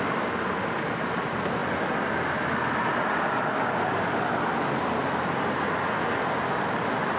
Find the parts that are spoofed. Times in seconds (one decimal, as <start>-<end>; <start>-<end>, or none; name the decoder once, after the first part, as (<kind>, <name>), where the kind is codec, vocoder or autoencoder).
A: none